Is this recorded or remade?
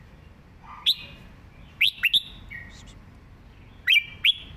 recorded